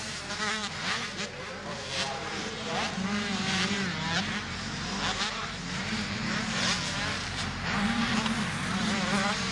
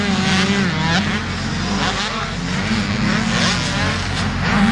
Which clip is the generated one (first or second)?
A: first